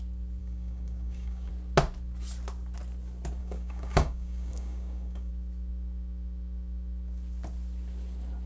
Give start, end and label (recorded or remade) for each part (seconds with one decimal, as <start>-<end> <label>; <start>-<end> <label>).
0.0-0.4 recorded; 0.4-1.5 remade; 1.5-3.4 recorded; 3.4-5.3 remade; 5.3-8.5 recorded